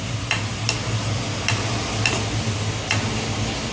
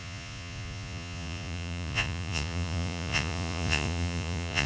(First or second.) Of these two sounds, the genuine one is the first